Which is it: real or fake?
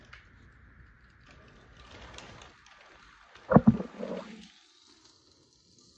real